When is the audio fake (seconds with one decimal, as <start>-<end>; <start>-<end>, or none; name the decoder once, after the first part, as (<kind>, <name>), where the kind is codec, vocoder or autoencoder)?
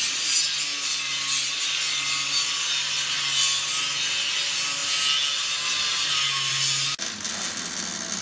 none